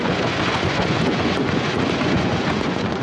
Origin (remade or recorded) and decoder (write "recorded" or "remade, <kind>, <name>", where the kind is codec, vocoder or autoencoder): remade, vocoder, Vocos